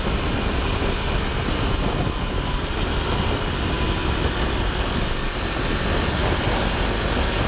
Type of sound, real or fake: real